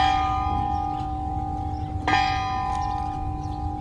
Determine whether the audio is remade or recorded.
recorded